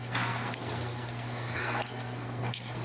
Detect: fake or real fake